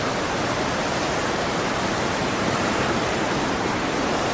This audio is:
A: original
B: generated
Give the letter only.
B